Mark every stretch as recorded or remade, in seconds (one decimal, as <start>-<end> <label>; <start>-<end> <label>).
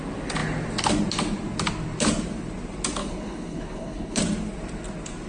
0.0-3.0 recorded; 3.0-4.2 remade; 4.2-5.3 recorded